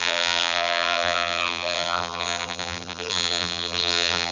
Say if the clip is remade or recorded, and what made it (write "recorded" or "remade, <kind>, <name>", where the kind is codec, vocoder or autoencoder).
remade, vocoder, BigVGAN v2